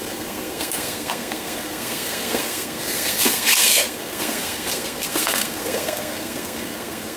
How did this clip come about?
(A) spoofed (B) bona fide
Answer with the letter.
A